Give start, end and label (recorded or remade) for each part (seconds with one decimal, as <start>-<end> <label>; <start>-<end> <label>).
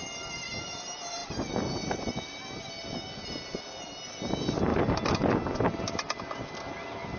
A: 0.0-7.2 recorded